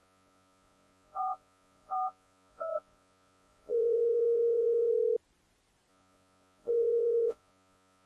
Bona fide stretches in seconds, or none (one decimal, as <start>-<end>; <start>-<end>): 4.9-5.9